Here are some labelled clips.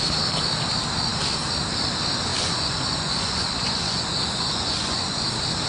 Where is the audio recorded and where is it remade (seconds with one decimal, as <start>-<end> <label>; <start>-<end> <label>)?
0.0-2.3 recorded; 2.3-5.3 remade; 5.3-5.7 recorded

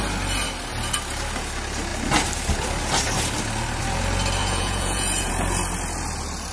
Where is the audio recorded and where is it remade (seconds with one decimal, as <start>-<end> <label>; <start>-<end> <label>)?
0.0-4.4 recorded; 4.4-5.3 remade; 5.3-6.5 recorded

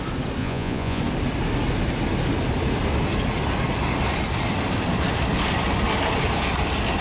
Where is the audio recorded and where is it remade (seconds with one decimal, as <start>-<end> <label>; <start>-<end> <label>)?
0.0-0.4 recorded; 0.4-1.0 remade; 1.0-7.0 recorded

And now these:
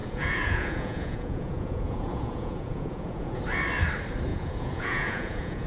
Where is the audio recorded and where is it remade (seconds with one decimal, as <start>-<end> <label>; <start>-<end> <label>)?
0.0-3.4 remade; 3.4-4.3 recorded; 4.3-5.7 remade

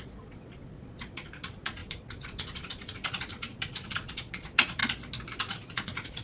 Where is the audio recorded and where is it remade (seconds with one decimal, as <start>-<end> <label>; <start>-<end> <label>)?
0.0-4.8 remade; 4.8-5.4 recorded; 5.4-6.2 remade

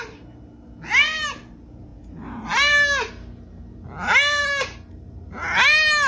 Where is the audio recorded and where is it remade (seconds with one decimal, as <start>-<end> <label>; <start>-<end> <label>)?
0.0-6.1 recorded

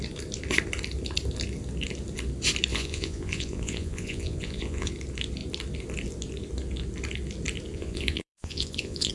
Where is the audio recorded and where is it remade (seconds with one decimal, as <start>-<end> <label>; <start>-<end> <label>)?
0.0-2.7 recorded; 2.7-4.9 remade; 4.9-7.7 recorded; 7.7-9.1 remade

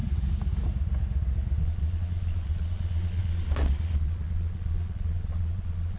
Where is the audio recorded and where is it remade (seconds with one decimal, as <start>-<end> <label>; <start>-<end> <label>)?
0.0-1.6 recorded; 1.6-6.0 remade